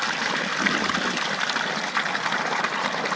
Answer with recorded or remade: recorded